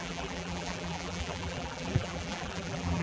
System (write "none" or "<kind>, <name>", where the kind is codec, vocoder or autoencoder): vocoder, BigVGAN v2